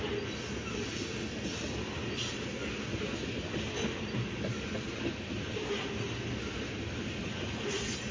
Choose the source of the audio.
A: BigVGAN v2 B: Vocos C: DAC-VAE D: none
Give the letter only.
D